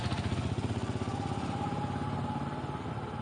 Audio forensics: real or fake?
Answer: real